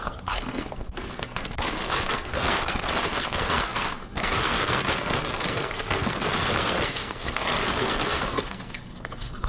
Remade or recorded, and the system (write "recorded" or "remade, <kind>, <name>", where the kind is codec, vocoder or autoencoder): remade, codec, SNAC